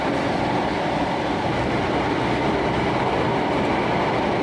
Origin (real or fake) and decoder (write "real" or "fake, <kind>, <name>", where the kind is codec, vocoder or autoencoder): real